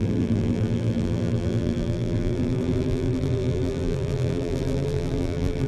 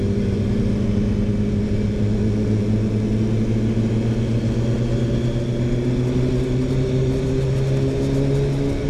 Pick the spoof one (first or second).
first